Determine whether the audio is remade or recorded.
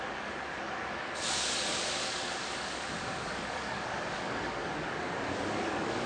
remade